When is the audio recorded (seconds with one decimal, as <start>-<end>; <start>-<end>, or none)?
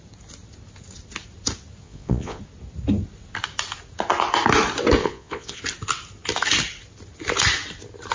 0.0-1.8; 2.4-5.0; 5.6-8.1